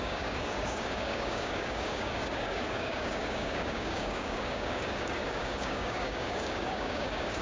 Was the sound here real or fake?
fake